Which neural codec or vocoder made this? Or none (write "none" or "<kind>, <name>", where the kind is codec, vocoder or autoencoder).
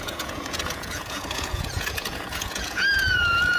vocoder, Vocos